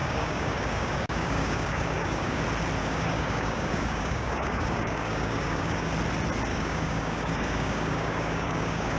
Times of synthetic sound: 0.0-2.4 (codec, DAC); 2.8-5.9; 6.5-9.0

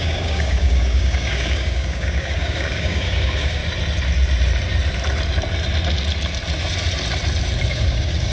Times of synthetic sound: 0.0-3.6 (codec, DAC); 7.7-8.3

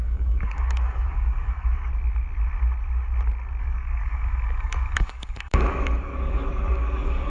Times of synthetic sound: 0.0-1.9 (codec, DAC); 3.6-7.3